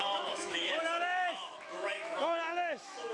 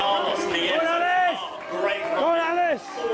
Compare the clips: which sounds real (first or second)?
second